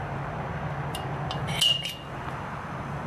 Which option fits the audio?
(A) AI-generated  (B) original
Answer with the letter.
B